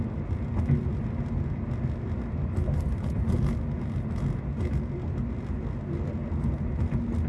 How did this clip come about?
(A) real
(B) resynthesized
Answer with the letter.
A